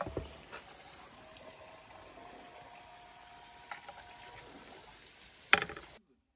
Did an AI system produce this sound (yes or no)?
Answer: no